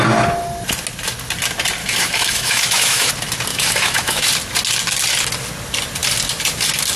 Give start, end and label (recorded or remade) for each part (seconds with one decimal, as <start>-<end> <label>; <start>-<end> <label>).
0.0-1.8 recorded; 1.8-3.1 remade; 3.1-3.5 recorded; 3.5-4.3 remade; 4.3-7.0 recorded

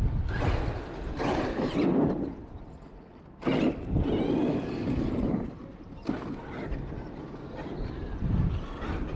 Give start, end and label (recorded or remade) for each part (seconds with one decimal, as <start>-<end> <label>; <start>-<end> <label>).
0.0-9.2 recorded

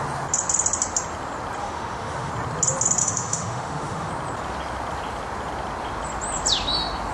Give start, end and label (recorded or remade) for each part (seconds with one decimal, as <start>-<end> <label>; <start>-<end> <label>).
0.0-1.6 recorded; 1.6-2.3 remade; 2.3-3.0 recorded; 3.0-4.1 remade; 4.1-7.1 recorded

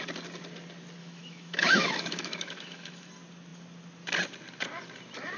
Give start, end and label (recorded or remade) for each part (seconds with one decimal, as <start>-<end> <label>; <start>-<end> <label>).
0.0-1.0 recorded; 1.0-3.1 remade; 3.1-5.4 recorded

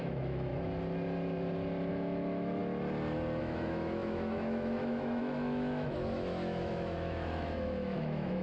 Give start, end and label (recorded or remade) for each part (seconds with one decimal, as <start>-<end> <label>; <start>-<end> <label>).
0.0-0.5 remade; 0.5-1.9 recorded; 1.9-2.6 remade; 2.6-3.4 recorded; 3.4-8.4 remade